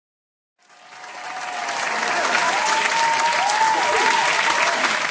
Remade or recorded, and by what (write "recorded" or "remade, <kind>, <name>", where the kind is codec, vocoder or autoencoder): recorded